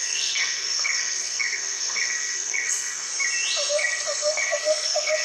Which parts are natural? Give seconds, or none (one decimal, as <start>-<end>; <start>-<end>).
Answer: 3.1-3.7